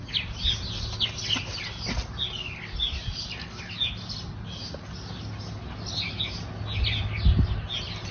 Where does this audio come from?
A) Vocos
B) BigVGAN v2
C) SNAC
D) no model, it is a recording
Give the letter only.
D